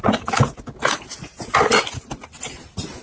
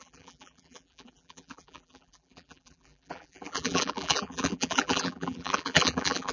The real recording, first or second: first